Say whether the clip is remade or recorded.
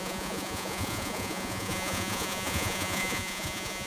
remade